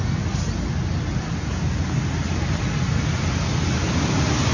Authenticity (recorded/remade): recorded